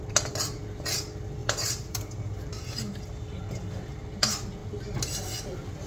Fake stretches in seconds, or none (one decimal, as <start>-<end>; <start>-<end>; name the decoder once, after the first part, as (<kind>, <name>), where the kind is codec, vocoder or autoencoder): 1.4-2.5 (vocoder, BigVGAN v2)